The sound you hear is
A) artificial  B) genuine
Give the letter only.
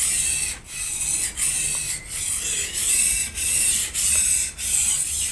B